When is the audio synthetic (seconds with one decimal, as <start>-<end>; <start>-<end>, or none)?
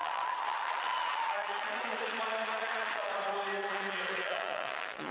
0.0-3.1; 3.6-5.1